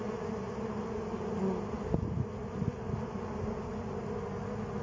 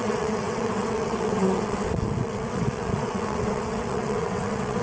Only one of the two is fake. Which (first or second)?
second